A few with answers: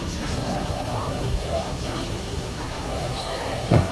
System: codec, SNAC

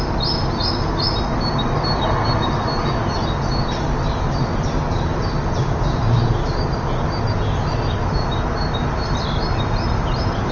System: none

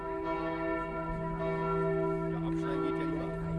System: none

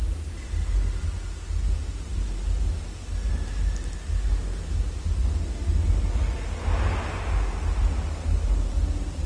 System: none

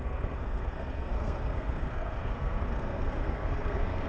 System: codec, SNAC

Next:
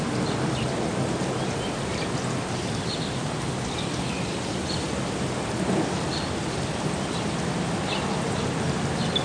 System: none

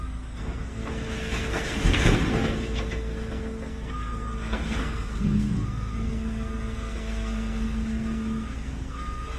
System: codec, SNAC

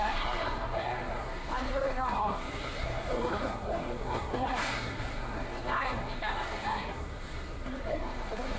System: codec, SNAC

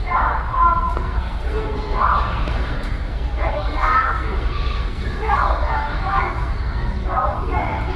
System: codec, SNAC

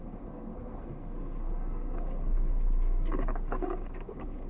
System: codec, SNAC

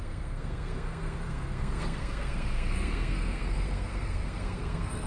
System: codec, SNAC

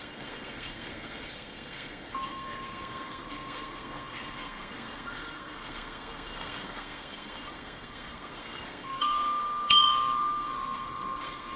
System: codec, SNAC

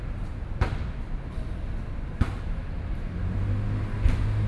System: none